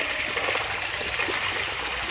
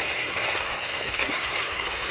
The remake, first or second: second